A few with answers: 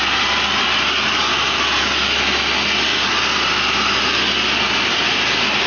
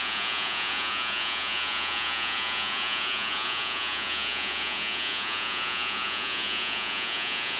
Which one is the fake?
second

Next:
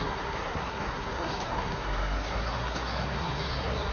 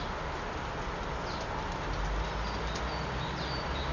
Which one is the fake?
first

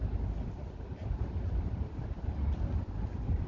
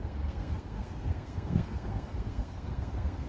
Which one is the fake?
second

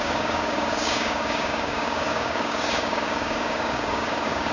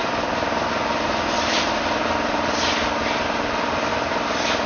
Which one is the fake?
first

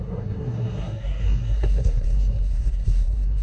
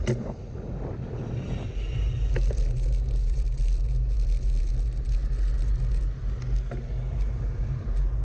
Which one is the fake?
first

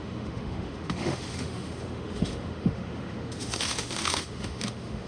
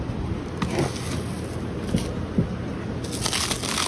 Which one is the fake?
first